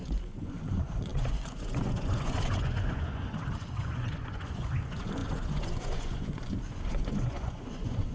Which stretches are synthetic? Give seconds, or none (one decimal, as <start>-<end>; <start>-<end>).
0.0-8.1